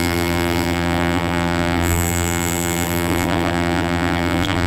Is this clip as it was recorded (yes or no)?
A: no